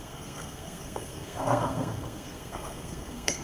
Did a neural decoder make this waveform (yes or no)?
yes